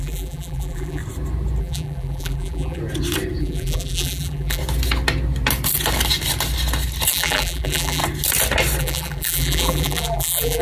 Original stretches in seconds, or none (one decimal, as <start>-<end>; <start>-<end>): 1.0-1.6; 2.8-3.4; 4.6-7.1; 8.0-8.8